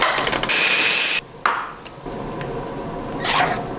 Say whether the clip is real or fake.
real